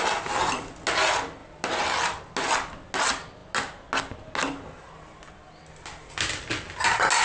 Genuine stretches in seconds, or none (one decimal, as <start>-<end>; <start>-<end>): 0.0-7.2